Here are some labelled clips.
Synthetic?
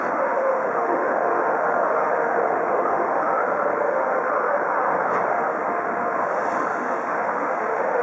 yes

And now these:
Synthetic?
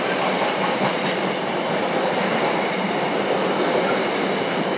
no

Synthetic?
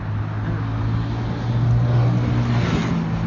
no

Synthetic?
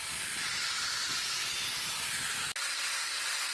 no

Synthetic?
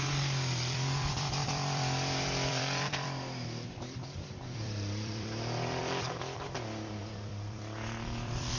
yes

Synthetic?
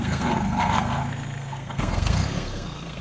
yes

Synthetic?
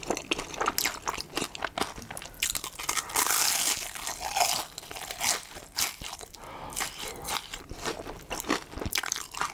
no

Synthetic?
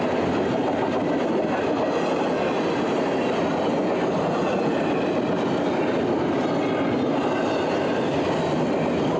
no